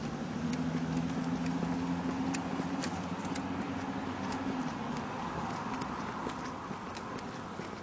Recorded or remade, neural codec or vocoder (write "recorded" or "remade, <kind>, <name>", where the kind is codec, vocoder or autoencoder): recorded